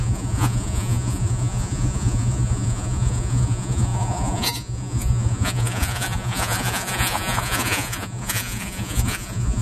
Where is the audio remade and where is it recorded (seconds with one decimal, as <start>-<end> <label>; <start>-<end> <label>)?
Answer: 0.0-9.6 remade

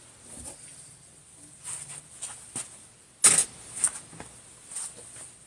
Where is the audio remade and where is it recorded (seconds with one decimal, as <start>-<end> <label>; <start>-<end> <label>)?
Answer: 0.0-5.5 recorded